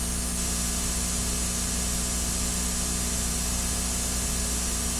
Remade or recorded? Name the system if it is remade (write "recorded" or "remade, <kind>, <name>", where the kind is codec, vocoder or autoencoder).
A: recorded